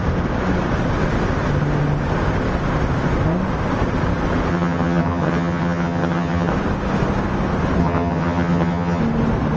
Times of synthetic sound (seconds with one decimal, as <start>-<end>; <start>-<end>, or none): 4.5-6.5; 7.8-9.0